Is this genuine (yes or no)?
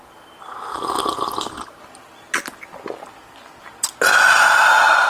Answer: yes